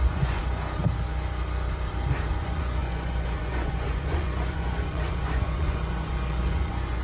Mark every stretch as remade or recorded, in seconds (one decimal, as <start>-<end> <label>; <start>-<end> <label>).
0.0-0.4 remade; 0.4-2.4 recorded; 2.4-7.0 remade